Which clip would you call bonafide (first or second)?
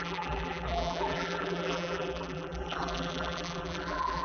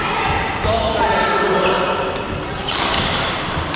second